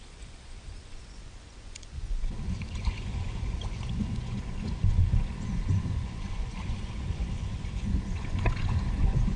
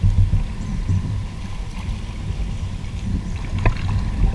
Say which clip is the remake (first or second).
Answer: first